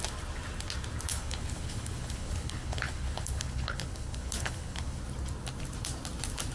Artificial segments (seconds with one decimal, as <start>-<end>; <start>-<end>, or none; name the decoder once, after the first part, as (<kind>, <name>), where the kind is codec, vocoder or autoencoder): 1.1-5.0 (codec, HILCodec)